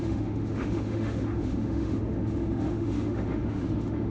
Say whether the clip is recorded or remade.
remade